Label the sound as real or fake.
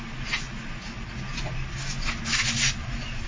real